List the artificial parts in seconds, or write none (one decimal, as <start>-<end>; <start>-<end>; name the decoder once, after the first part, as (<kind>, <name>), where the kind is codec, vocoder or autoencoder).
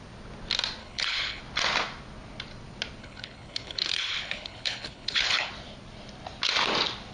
0.8-1.4 (codec, HILCodec); 3.0-5.5